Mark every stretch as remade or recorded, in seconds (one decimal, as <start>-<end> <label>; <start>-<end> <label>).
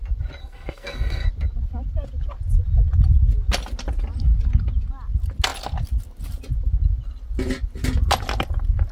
0.0-0.4 recorded; 0.4-1.3 remade; 1.3-8.9 recorded